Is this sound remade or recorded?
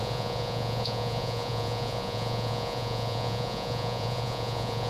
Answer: remade